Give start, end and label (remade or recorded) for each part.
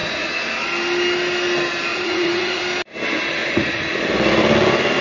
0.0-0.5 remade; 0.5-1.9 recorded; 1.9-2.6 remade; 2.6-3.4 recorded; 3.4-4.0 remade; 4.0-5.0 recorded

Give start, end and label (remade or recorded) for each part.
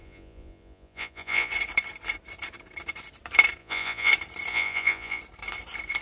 0.0-1.5 remade; 1.5-3.6 recorded; 3.6-4.1 remade; 4.1-4.5 recorded; 4.5-5.2 remade; 5.2-6.0 recorded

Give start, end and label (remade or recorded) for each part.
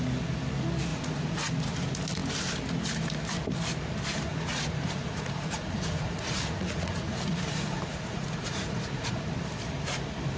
0.0-0.9 recorded; 0.9-1.5 remade; 1.5-4.3 recorded; 4.3-9.2 remade; 9.2-10.4 recorded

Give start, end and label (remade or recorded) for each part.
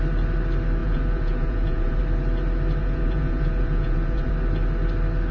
0.0-0.8 recorded; 0.8-2.0 remade; 2.0-2.8 recorded; 2.8-4.3 remade; 4.3-5.3 recorded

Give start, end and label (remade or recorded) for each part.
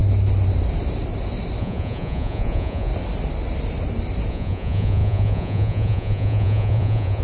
0.0-1.6 recorded; 1.6-2.9 remade; 2.9-4.3 recorded; 4.3-7.2 remade